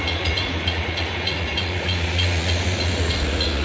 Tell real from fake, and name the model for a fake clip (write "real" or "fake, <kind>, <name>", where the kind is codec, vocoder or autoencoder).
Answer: fake, vocoder, Vocos